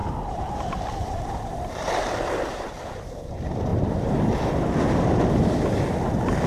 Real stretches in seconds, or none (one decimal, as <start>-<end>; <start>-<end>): 3.3-3.7; 4.4-6.5